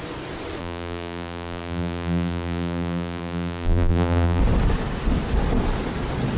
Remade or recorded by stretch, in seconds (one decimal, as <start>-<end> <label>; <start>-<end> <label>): 0.0-0.6 recorded; 0.6-4.4 remade; 4.4-6.4 recorded